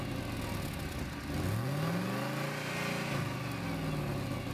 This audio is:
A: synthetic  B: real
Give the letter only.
B